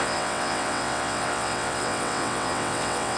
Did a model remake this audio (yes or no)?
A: yes